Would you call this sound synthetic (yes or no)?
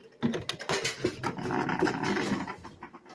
no